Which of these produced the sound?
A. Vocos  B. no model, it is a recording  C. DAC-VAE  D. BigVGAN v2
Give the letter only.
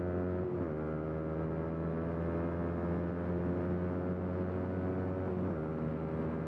B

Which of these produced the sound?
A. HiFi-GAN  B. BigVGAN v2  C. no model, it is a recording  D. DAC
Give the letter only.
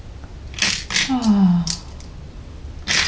C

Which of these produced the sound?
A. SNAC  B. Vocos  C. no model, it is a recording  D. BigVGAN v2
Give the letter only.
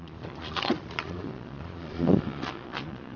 B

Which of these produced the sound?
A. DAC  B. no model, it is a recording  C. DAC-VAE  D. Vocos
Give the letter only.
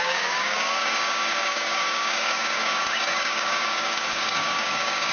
A